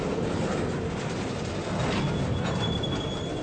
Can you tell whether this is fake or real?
real